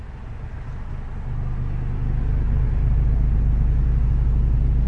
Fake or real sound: real